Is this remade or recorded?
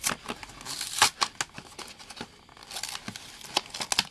recorded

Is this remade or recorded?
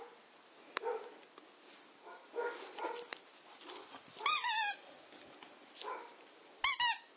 recorded